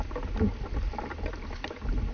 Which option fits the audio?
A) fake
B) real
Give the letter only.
B